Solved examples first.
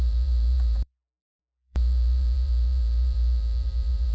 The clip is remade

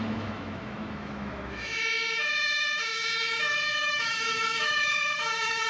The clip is remade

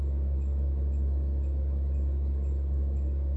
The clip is remade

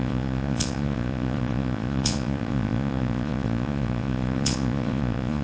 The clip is remade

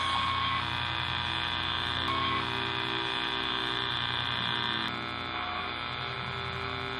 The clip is recorded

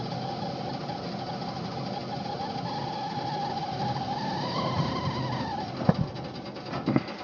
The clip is recorded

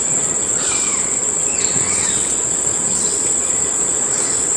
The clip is remade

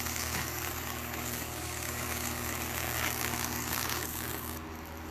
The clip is remade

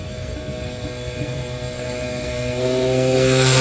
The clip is remade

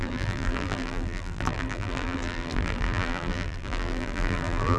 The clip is remade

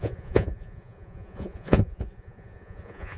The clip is remade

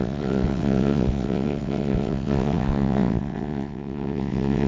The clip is remade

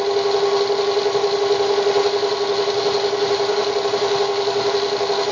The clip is recorded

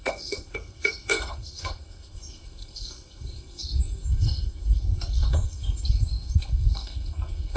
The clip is remade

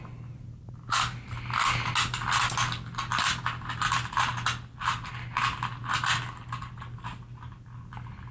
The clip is recorded